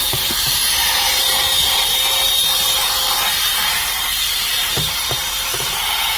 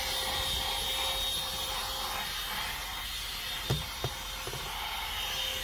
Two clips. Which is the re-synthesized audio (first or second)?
first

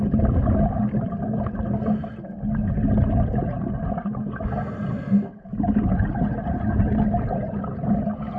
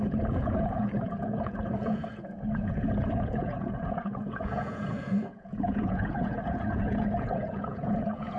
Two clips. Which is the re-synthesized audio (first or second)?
second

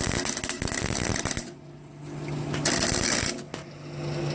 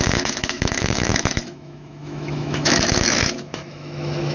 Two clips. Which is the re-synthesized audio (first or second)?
second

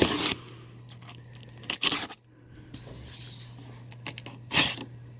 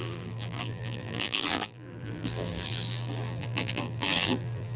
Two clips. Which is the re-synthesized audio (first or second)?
second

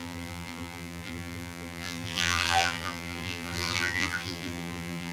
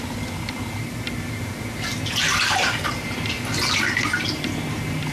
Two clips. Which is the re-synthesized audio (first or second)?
first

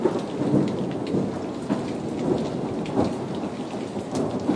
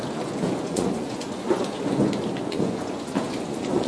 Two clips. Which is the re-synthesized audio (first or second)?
second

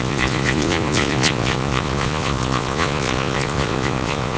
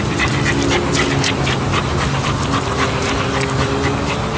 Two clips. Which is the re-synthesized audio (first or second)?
first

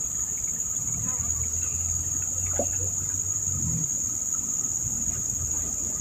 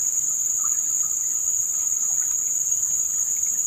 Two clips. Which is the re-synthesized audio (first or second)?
first